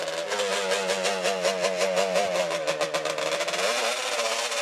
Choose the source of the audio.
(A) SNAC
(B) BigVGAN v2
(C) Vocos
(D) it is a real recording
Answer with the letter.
D